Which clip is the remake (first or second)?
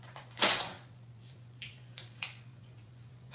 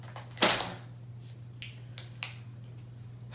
first